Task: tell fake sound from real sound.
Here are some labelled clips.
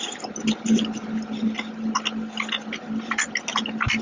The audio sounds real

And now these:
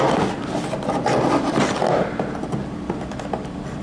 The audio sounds fake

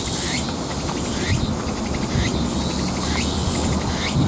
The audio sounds real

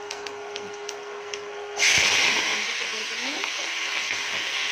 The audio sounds fake